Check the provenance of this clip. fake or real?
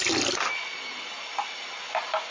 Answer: real